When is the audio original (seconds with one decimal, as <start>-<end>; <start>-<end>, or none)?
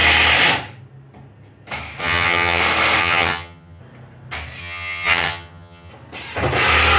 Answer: 0.0-2.0; 2.6-3.0; 3.8-4.6; 5.9-7.0